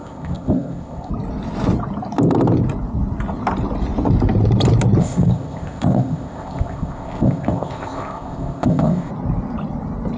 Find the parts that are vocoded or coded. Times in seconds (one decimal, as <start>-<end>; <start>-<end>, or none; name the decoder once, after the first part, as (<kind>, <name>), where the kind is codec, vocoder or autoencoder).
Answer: 0.0-1.1 (codec, ZipCodec); 5.0-9.1